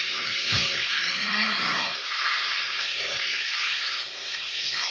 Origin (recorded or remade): remade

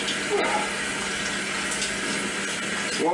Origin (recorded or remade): recorded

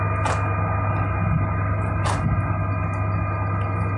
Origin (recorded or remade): recorded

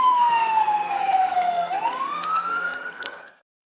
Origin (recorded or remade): remade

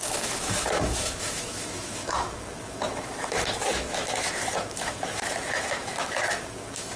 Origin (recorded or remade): remade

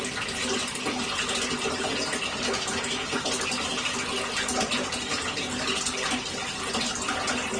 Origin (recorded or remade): recorded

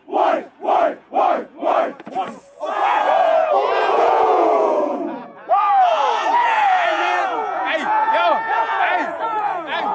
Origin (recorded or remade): remade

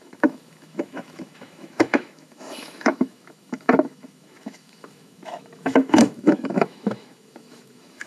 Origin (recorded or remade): remade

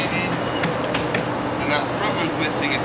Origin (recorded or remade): recorded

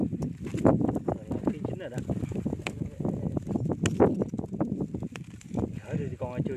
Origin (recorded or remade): recorded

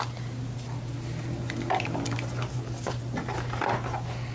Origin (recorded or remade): recorded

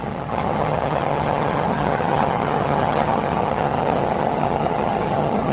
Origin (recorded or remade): remade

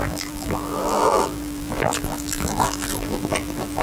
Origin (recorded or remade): remade